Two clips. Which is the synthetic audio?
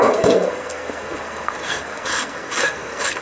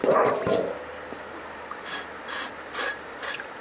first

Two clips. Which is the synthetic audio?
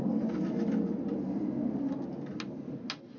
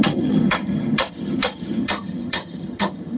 second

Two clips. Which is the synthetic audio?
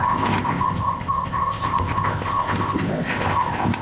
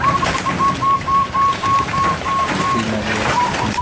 first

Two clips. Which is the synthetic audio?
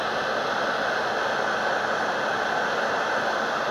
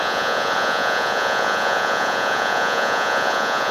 second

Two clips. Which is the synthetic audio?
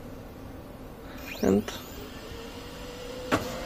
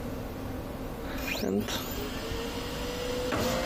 first